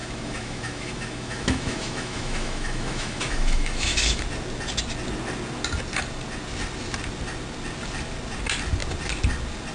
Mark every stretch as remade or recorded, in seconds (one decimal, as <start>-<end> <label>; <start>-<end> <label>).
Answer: 0.0-4.2 remade; 4.2-9.7 recorded